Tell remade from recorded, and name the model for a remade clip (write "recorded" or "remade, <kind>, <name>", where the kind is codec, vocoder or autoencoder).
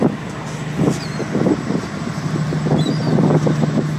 recorded